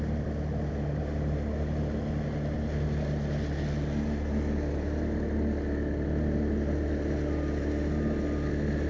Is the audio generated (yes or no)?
no